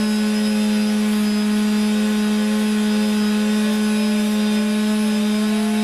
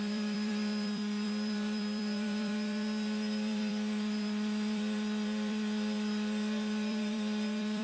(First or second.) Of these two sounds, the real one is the first